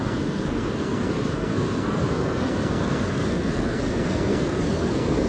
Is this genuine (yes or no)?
no